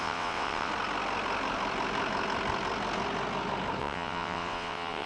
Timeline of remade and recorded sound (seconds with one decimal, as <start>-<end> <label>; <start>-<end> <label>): 0.0-0.7 remade; 0.7-3.8 recorded; 3.8-5.1 remade